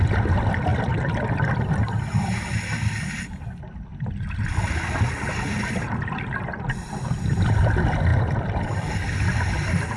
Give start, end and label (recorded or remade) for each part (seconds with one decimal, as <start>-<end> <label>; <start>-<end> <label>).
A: 0.0-8.1 recorded; 8.1-9.5 remade; 9.5-10.0 recorded